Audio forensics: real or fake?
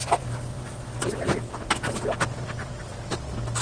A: real